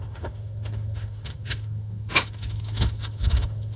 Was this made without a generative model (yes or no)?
no